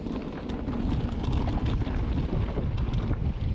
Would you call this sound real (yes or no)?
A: yes